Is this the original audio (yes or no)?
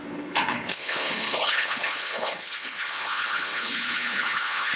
no